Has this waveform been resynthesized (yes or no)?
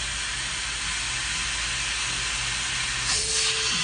no